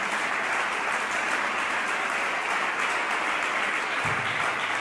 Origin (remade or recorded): recorded